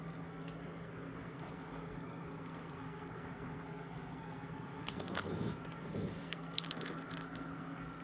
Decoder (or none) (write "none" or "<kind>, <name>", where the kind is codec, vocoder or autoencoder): codec, SNAC